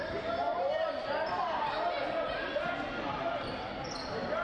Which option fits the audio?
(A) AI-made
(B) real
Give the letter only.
B